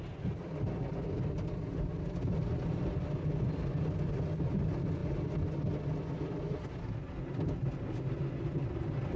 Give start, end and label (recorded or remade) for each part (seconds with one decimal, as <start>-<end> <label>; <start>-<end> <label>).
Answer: 0.0-9.2 recorded